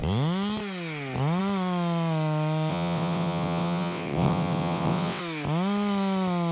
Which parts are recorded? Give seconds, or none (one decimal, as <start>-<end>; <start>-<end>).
0.0-2.7; 5.2-6.5